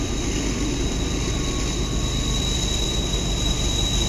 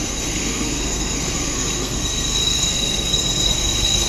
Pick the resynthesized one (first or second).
second